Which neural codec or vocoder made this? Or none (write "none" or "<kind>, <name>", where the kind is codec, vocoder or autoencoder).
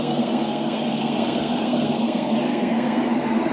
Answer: codec, SNAC